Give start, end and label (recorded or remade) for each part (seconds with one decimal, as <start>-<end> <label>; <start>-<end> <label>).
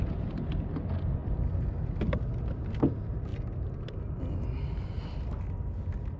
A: 0.0-6.2 recorded